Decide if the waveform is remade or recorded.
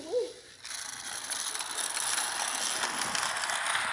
recorded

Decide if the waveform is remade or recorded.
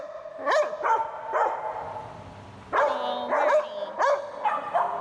recorded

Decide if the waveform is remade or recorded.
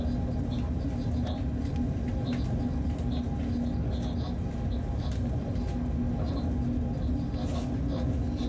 recorded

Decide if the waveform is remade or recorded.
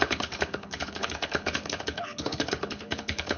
remade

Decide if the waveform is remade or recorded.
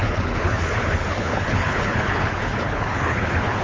remade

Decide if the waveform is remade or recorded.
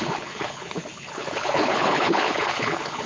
remade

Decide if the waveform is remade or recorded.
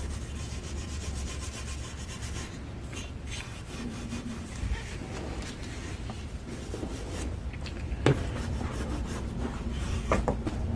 recorded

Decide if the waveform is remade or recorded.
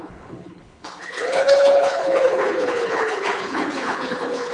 remade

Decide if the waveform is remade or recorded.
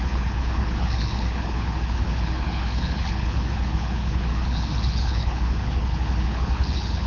remade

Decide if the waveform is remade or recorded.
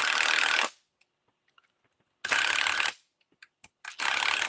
recorded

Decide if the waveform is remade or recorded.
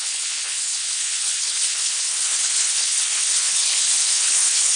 remade